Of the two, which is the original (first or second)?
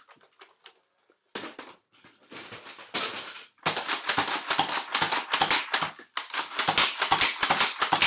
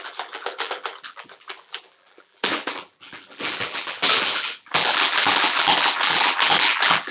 first